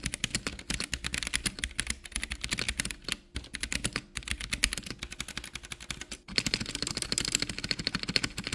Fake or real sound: real